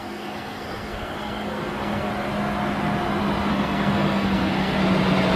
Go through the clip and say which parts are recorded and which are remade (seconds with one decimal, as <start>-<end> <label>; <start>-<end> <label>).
0.0-2.1 remade; 2.1-3.5 recorded; 3.5-4.8 remade; 4.8-5.4 recorded

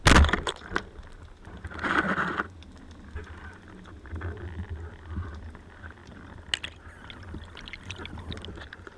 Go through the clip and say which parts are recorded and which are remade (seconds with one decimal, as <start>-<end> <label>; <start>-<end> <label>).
0.0-9.0 recorded

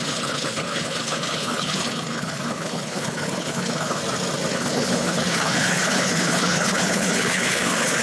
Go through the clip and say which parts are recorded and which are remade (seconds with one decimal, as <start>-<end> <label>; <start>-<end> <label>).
0.0-4.0 remade; 4.0-4.5 recorded; 4.5-8.0 remade

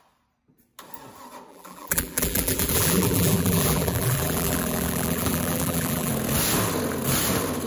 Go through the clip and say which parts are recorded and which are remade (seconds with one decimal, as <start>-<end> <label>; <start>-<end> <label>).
0.0-1.5 recorded; 1.5-6.1 remade; 6.1-7.7 recorded

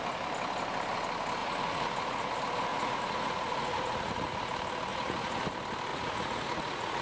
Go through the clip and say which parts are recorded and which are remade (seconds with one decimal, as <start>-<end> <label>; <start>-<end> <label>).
0.0-1.4 recorded; 1.4-2.3 remade; 2.3-2.7 recorded; 2.7-4.5 remade; 4.5-4.9 recorded; 4.9-5.5 remade; 5.5-5.9 recorded; 5.9-7.0 remade

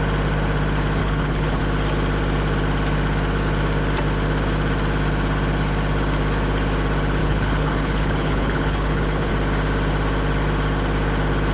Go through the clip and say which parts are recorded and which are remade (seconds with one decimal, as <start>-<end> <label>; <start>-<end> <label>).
0.0-1.0 recorded; 1.0-1.6 remade; 1.6-7.2 recorded; 7.2-9.3 remade; 9.3-11.5 recorded

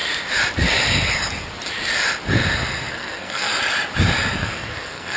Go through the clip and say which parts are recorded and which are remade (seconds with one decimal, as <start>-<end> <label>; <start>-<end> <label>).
0.0-2.9 recorded; 2.9-3.5 remade; 3.5-4.4 recorded; 4.4-5.2 remade

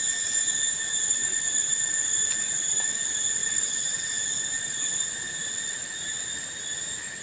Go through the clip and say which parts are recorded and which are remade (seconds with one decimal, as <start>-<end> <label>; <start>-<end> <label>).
0.0-7.2 remade